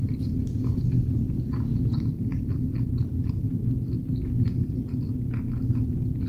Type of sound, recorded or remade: recorded